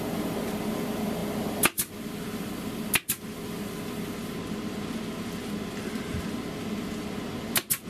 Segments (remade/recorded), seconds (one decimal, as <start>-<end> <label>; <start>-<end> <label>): 0.0-7.9 recorded